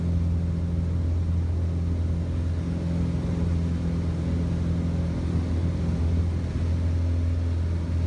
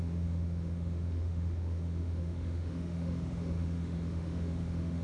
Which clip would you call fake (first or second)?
second